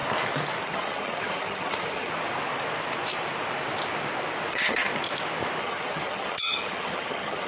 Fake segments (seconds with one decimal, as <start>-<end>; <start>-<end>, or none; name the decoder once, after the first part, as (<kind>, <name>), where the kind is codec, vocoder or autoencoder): 0.6-2.1 (vocoder, HiFi-GAN); 4.5-4.9; 5.6-7.5